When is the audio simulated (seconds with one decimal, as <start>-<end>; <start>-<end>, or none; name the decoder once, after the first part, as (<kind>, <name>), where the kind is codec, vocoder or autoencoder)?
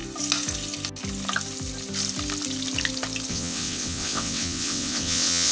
3.3-5.5 (vocoder, WaveNeXt)